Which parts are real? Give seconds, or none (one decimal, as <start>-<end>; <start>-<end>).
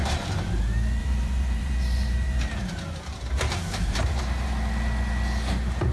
0.5-1.0; 4.5-5.9